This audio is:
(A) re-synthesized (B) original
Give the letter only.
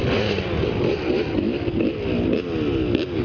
B